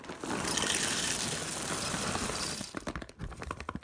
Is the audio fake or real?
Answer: fake